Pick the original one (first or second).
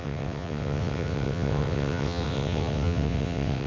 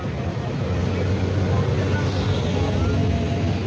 second